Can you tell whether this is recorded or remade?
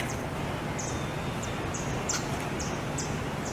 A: recorded